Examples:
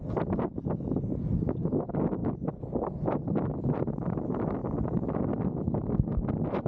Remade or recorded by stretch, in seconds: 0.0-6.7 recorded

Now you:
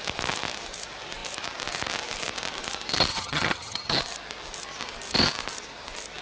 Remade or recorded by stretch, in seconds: 0.0-3.1 recorded; 3.1-4.0 remade; 4.0-6.2 recorded

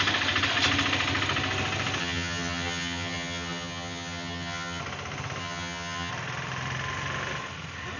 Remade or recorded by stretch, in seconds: 0.0-2.0 recorded; 2.0-4.8 remade; 4.8-5.4 recorded; 5.4-6.1 remade; 6.1-8.0 recorded

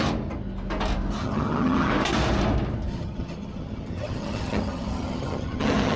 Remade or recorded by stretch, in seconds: 0.0-1.2 recorded; 1.2-1.9 remade; 1.9-2.9 recorded; 2.9-6.0 remade

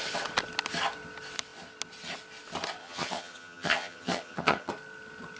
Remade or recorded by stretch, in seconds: 0.0-2.8 recorded; 2.8-4.7 remade; 4.7-5.4 recorded

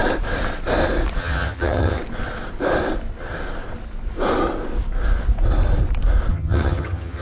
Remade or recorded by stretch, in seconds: 0.0-1.2 recorded; 1.2-2.0 remade; 2.0-6.3 recorded; 6.3-7.2 remade